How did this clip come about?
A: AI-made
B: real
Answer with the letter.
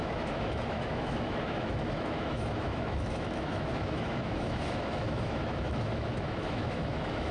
A